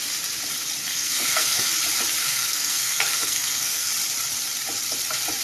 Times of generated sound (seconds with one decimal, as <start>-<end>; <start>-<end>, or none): 0.9-1.7; 2.2-3.9

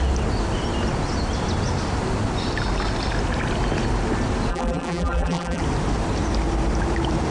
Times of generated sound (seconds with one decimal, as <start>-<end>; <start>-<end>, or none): 4.5-5.6